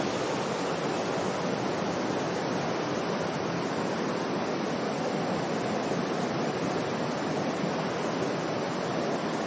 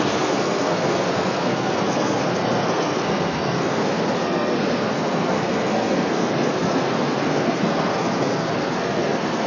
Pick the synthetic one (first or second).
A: second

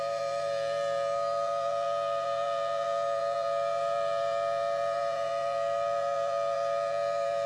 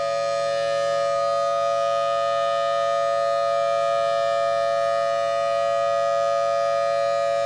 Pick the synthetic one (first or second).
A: first